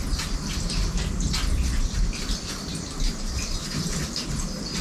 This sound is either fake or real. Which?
real